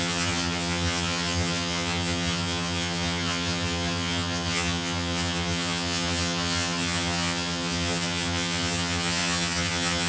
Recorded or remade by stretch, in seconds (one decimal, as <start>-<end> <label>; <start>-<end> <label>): 0.0-10.1 remade